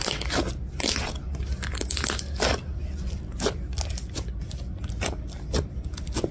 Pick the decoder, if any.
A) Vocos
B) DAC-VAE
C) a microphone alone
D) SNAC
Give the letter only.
C